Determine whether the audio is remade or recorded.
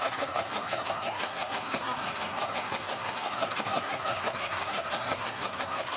remade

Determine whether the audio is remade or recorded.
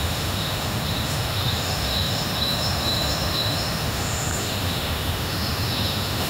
remade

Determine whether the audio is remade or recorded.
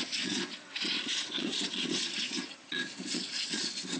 remade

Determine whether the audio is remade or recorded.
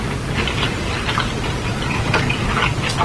recorded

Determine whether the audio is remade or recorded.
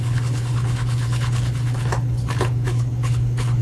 remade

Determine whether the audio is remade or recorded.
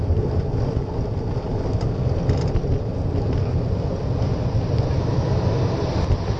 recorded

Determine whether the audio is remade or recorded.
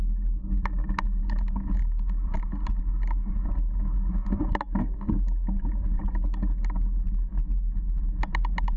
recorded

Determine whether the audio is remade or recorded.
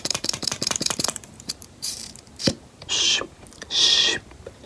remade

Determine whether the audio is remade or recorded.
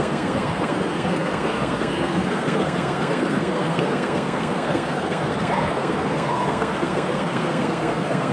remade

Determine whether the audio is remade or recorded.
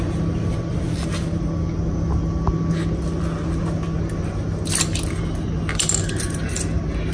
recorded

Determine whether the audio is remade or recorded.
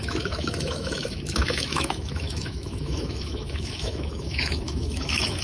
remade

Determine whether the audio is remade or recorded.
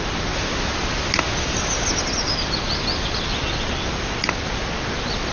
recorded